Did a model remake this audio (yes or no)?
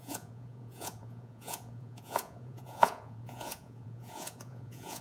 yes